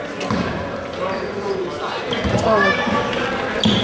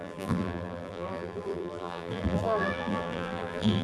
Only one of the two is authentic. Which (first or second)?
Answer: first